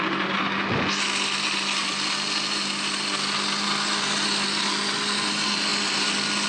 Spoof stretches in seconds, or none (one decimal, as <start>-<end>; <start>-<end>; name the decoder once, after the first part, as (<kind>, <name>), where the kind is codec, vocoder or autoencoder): none